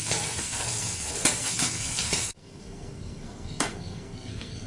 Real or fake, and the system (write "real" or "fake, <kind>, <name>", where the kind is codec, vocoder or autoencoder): fake, codec, SNAC